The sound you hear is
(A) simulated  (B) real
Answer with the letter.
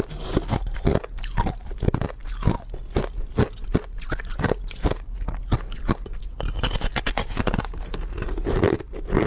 B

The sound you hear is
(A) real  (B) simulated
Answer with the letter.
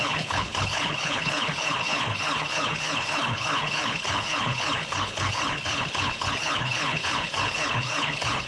B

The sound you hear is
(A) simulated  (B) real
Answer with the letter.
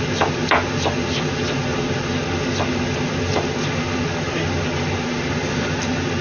B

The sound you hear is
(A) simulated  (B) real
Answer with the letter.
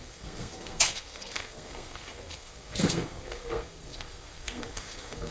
A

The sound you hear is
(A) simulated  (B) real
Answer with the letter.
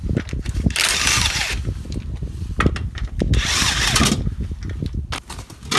B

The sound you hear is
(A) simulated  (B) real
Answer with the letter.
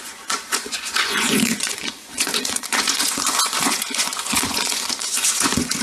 A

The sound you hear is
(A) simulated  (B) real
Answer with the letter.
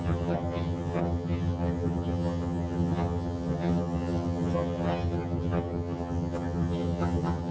A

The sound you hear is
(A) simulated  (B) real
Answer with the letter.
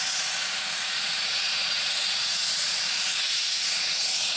A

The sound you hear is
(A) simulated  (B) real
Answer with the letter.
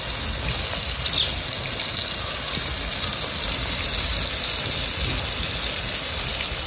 B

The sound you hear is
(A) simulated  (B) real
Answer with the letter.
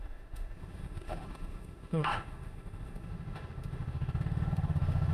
A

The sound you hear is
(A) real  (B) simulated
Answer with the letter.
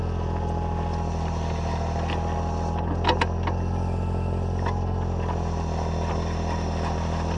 A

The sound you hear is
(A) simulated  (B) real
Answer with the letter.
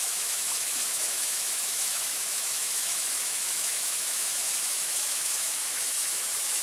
A